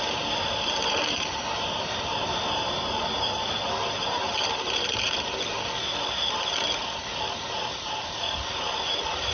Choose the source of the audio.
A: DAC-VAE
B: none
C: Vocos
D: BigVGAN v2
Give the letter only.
D